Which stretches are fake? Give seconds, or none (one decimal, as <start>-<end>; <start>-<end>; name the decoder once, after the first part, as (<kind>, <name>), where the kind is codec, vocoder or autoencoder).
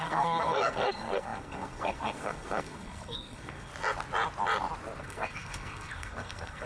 0.0-3.7 (codec, SNAC); 5.0-6.7